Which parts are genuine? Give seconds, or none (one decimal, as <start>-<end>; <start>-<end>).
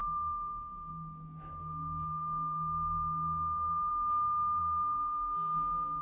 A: 0.9-1.6; 3.9-4.6